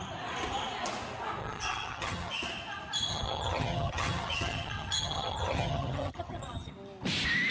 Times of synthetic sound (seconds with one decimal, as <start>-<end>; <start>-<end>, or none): 1.4-2.3; 3.1-6.7

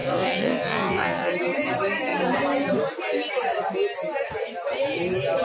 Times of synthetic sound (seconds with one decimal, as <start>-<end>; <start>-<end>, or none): 0.0-1.3